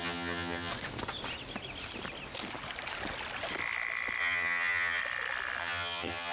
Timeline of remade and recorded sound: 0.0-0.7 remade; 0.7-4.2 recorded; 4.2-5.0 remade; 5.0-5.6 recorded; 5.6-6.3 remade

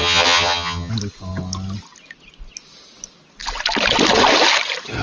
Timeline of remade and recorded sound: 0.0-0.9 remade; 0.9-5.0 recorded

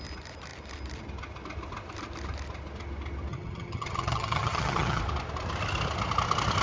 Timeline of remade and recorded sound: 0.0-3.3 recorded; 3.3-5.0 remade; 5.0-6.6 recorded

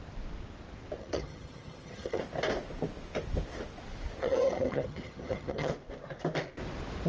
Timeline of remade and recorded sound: 0.0-1.0 recorded; 1.0-2.2 remade; 2.2-4.2 recorded; 4.2-5.7 remade; 5.7-7.1 recorded

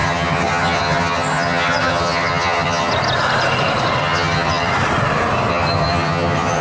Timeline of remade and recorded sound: 0.0-2.9 remade; 2.9-4.0 recorded; 4.0-4.7 remade; 4.7-5.5 recorded; 5.5-6.6 remade

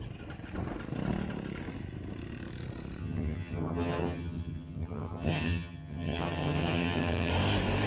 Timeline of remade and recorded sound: 0.0-3.0 recorded; 3.0-7.3 remade; 7.3-7.9 recorded